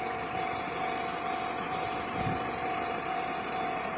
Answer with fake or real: real